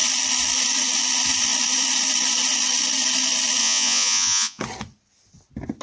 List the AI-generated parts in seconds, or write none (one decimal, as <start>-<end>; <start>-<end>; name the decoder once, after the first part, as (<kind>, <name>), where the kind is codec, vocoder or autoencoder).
3.6-4.6 (vocoder, Vocos)